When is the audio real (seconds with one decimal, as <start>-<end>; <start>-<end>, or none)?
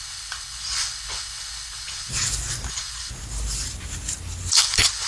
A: 2.1-2.7; 3.1-4.5